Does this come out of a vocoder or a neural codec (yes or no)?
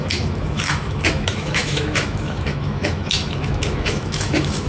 yes